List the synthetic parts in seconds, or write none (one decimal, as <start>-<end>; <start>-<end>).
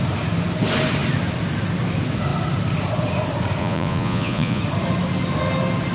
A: 3.6-4.6